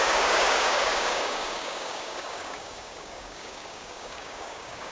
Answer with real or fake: fake